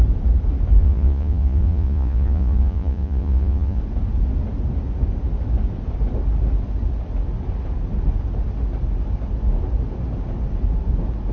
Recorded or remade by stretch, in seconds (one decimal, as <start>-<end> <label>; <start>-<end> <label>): 0.0-0.8 recorded; 0.8-3.8 remade; 3.8-11.3 recorded